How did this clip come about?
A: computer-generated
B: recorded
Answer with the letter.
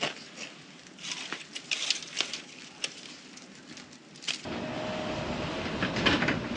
B